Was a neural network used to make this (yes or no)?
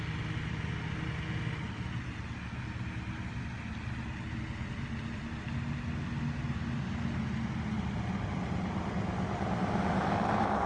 no